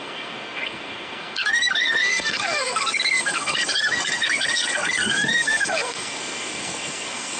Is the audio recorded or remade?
remade